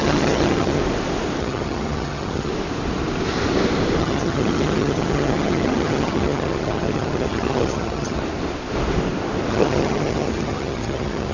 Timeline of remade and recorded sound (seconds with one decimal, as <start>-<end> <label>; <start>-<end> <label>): 0.0-0.8 remade; 0.8-1.4 recorded; 1.4-2.5 remade; 2.5-4.0 recorded; 4.0-8.2 remade; 8.2-9.5 recorded; 9.5-11.3 remade